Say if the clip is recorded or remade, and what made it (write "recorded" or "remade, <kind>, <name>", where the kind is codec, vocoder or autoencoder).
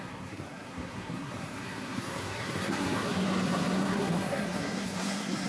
remade, codec, SNAC